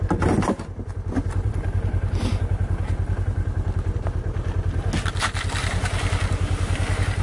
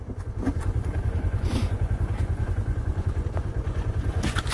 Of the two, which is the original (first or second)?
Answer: first